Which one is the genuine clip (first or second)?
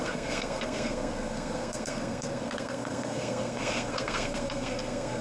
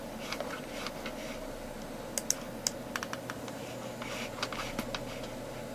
second